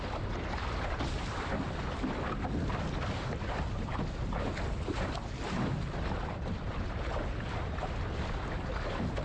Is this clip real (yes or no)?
yes